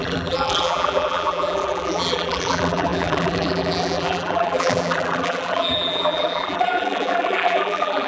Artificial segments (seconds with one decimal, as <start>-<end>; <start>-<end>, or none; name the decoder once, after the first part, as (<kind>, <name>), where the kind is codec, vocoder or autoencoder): 0.0-8.1 (vocoder, BigVGAN v2)